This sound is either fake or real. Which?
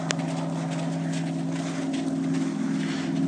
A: real